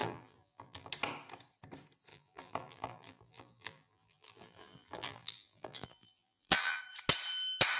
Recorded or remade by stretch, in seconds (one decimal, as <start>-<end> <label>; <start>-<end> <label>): 0.0-0.9 remade; 0.9-2.1 recorded; 2.1-6.8 remade; 6.8-7.8 recorded

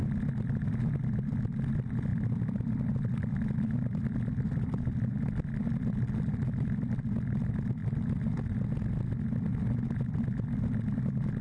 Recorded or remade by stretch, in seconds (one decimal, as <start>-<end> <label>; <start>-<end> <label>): 0.0-0.7 remade; 0.7-2.1 recorded; 2.1-7.0 remade; 7.0-7.8 recorded; 7.8-8.4 remade; 8.4-11.4 recorded

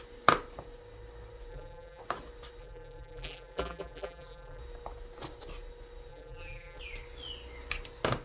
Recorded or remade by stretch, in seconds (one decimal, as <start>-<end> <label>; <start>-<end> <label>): 0.0-1.5 recorded; 1.5-2.0 remade; 2.0-2.6 recorded; 2.6-4.6 remade; 4.6-6.1 recorded; 6.1-6.8 remade; 6.8-8.2 recorded

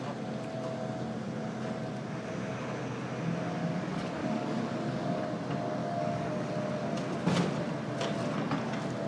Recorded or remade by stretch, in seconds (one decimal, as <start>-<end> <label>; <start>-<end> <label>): 0.0-3.6 recorded; 3.6-5.2 remade; 5.2-5.8 recorded; 5.8-6.5 remade; 6.5-9.1 recorded

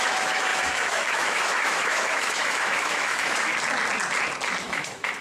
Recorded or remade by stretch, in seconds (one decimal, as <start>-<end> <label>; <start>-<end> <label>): 0.0-3.5 remade; 3.5-4.6 recorded; 4.6-5.2 remade

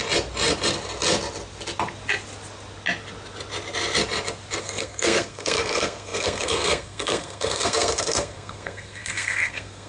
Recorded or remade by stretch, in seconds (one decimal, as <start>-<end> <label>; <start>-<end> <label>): 0.0-4.6 recorded; 4.6-9.9 remade

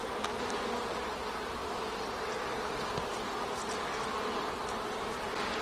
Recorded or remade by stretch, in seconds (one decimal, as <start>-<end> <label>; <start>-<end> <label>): 0.0-5.6 recorded

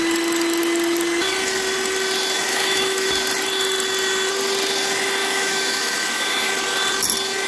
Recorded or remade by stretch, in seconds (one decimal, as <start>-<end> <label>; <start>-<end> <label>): 0.0-2.5 recorded; 2.5-3.1 remade; 3.1-5.2 recorded; 5.2-6.5 remade; 6.5-7.5 recorded